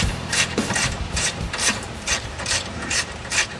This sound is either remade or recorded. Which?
remade